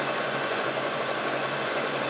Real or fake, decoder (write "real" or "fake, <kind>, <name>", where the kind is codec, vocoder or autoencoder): fake, vocoder, Vocos